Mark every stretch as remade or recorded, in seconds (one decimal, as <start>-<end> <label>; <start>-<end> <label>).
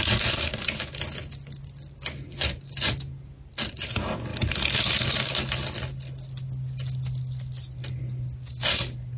0.0-9.2 recorded